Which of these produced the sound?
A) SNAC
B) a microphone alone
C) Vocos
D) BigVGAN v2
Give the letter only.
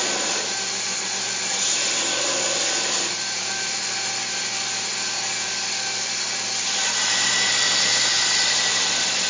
D